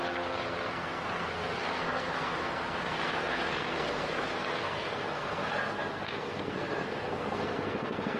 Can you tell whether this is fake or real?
fake